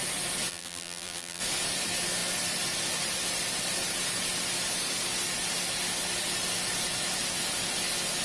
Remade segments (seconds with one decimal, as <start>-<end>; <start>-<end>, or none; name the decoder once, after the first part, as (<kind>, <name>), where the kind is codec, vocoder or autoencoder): 0.5-1.4 (vocoder, BigVGAN v2)